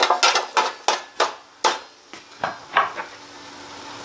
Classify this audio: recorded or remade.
recorded